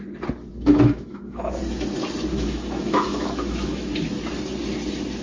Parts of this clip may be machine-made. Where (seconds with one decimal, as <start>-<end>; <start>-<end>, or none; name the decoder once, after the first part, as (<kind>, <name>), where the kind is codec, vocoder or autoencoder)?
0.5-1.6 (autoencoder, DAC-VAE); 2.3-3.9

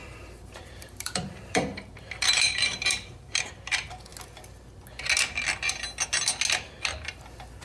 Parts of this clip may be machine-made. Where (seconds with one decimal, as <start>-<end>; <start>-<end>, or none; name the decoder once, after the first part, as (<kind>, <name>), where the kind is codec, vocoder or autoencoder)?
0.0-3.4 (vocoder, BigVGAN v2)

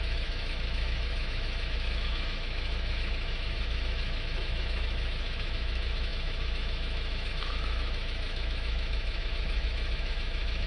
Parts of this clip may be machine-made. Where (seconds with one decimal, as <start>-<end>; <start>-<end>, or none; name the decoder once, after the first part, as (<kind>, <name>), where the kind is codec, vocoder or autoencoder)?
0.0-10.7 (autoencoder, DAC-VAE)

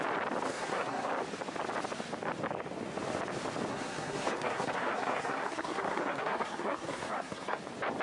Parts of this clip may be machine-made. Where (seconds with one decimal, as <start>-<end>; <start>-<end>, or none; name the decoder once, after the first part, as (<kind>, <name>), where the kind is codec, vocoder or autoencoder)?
0.5-1.1 (codec, SNAC); 3.7-7.6

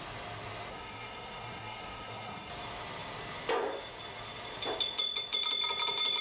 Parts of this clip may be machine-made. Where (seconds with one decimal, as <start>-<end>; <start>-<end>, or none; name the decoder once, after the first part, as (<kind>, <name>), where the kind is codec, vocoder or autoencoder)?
0.7-2.5 (codec, SNAC)

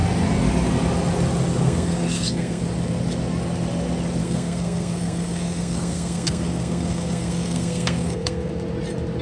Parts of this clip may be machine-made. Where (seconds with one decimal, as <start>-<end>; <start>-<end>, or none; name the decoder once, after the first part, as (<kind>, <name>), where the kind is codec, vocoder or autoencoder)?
1.6-2.6 (codec, SNAC); 4.2-8.5